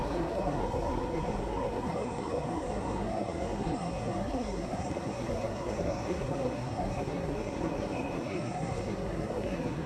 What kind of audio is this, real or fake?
fake